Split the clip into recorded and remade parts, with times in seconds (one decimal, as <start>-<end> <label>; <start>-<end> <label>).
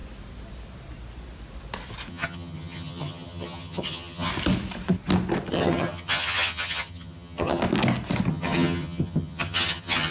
0.0-2.1 recorded; 2.1-4.3 remade; 4.3-5.5 recorded; 5.5-7.6 remade; 7.6-8.3 recorded; 8.3-10.1 remade